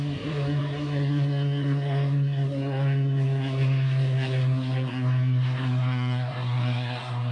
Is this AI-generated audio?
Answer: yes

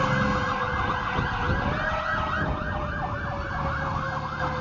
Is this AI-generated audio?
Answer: no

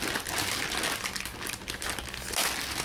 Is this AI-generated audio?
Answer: no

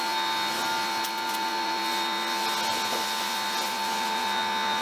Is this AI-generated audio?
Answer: no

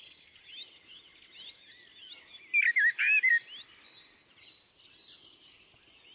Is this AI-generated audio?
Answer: no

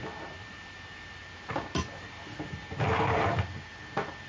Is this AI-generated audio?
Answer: no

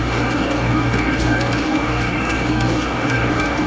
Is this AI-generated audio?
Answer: yes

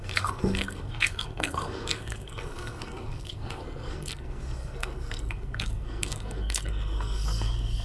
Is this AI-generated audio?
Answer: yes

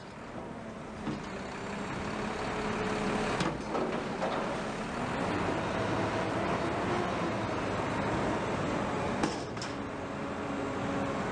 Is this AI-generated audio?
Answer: no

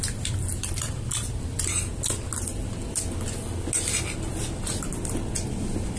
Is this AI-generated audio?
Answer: no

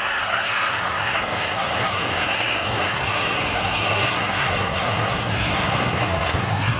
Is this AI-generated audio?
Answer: yes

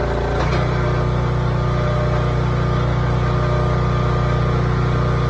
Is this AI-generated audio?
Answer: no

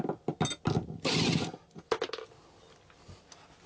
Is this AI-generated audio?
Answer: no